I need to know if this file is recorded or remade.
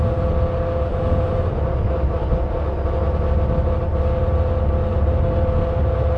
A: recorded